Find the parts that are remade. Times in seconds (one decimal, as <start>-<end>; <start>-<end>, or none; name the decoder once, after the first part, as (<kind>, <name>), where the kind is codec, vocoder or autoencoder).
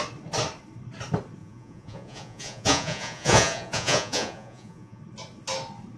1.4-5.0 (vocoder, Vocos)